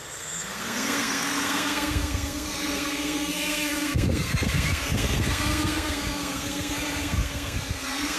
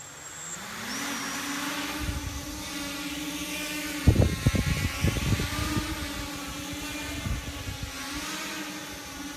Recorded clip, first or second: second